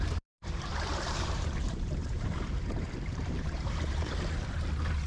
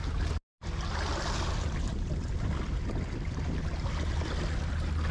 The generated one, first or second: first